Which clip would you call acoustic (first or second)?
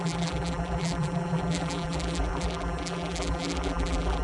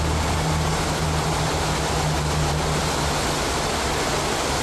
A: second